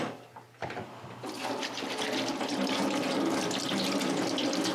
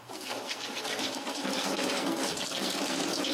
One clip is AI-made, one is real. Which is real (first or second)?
first